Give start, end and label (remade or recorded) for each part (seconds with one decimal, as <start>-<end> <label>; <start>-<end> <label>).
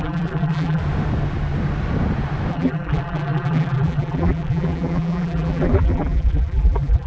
0.0-0.8 remade; 0.8-2.5 recorded; 2.5-7.1 remade